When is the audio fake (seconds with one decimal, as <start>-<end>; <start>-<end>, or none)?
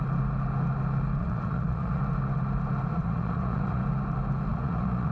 1.2-2.0; 2.9-3.8; 4.5-5.1